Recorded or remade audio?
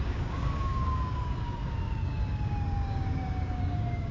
remade